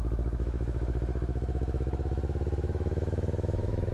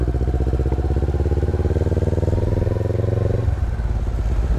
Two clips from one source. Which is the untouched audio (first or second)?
second